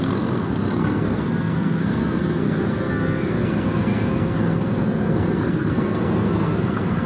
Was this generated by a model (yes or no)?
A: yes